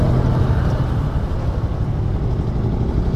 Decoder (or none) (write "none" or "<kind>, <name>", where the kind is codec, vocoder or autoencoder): none